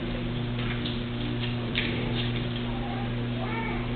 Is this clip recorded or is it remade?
remade